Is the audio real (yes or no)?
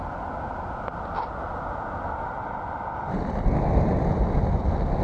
yes